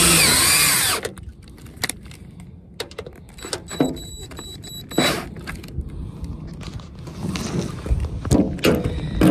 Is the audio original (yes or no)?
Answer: yes